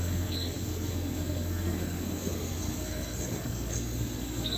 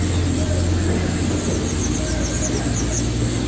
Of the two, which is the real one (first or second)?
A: second